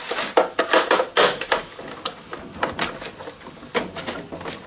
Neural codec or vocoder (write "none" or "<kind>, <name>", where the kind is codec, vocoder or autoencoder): none